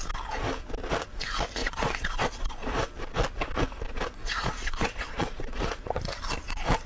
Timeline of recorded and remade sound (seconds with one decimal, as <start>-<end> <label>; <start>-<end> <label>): 0.0-1.6 recorded; 1.6-2.8 remade; 2.8-4.2 recorded; 4.2-6.0 remade; 6.0-6.9 recorded